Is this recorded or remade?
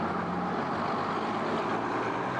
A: recorded